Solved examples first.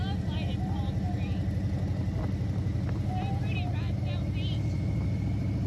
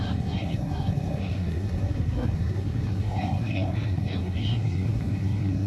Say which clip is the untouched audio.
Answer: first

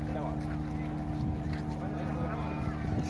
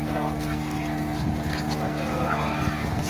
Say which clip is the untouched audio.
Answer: first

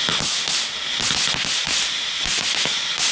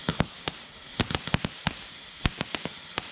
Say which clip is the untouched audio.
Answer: first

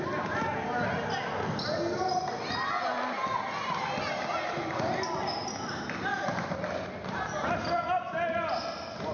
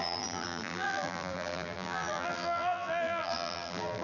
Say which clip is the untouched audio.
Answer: first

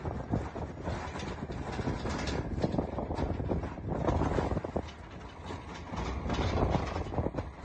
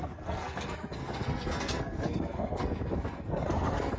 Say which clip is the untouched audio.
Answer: first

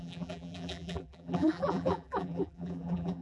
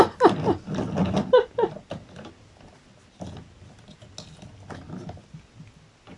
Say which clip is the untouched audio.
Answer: second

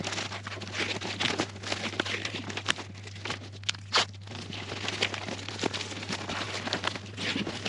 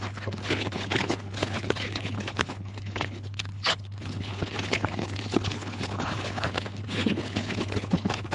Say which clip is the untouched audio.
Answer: first